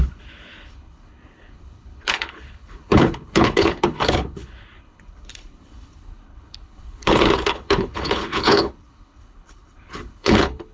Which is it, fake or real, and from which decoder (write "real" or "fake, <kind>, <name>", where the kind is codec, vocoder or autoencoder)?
fake, codec, HILCodec